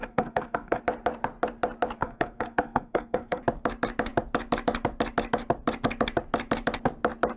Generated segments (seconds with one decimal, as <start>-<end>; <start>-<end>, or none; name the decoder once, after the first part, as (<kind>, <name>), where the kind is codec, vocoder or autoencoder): 0.0-0.8 (codec, SNAC); 2.0-3.4